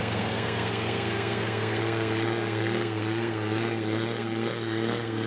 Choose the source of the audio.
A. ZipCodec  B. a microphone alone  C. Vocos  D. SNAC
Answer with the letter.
D